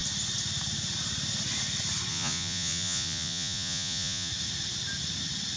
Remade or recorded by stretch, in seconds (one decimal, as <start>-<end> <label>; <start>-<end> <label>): 0.0-2.1 recorded; 2.1-4.3 remade; 4.3-5.6 recorded